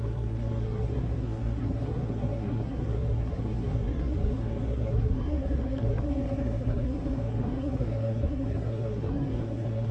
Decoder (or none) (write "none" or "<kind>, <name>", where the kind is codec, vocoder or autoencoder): codec, SNAC